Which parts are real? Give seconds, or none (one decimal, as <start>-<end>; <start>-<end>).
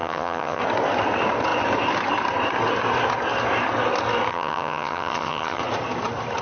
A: 0.6-4.3; 5.6-6.4